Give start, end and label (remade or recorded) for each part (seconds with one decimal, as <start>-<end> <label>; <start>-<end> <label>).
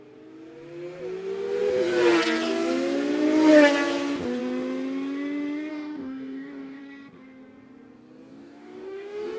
0.0-5.7 recorded; 5.7-6.8 remade; 6.8-8.3 recorded; 8.3-9.4 remade